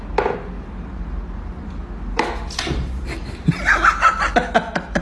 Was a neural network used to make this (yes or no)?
no